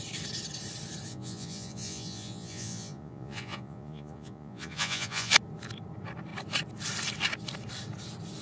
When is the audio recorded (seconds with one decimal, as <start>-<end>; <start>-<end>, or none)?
0.0-1.1; 5.3-8.4